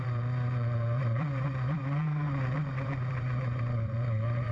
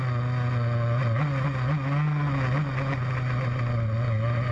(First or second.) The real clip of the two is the second